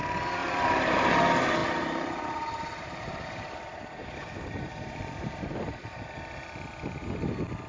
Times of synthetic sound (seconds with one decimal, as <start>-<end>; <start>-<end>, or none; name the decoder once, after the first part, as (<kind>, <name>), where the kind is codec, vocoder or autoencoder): 0.4-1.1 (vocoder, BigVGAN v2); 1.6-6.2